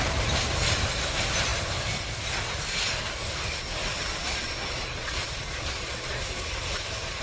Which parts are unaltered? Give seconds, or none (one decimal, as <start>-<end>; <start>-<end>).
0.0-4.1; 6.2-7.2